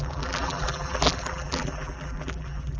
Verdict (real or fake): fake